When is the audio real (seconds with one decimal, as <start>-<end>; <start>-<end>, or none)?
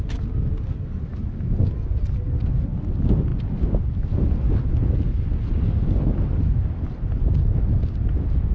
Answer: 0.0-8.5